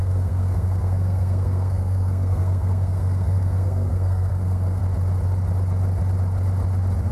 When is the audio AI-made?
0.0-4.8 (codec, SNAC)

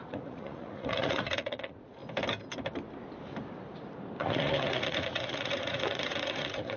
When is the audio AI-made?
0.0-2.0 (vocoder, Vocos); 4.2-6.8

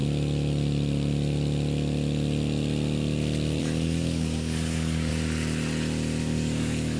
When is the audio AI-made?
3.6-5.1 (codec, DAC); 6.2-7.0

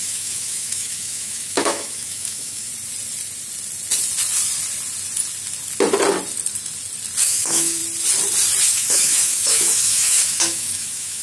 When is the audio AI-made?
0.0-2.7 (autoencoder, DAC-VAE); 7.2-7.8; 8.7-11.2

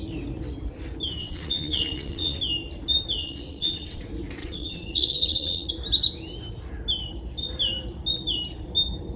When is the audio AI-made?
1.2-2.4 (vocoder, WaveNeXt); 3.2-4.0; 4.4-5.7